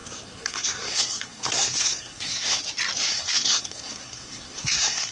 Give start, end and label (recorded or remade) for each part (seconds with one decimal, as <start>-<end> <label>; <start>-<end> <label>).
0.0-2.6 remade; 2.6-3.1 recorded; 3.1-5.1 remade